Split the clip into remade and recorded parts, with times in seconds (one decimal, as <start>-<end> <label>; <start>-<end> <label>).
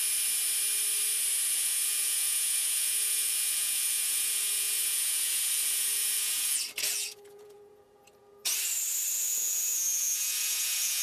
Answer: 0.0-1.5 recorded; 1.5-8.5 remade; 8.5-9.1 recorded; 9.1-11.0 remade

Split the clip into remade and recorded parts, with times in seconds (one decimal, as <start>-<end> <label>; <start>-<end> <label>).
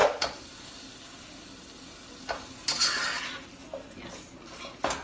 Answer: 0.0-5.0 recorded